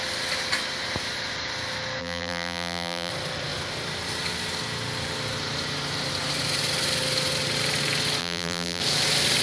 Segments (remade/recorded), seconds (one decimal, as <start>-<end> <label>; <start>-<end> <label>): 0.0-2.0 recorded; 2.0-3.1 remade; 3.1-8.2 recorded; 8.2-8.8 remade; 8.8-9.4 recorded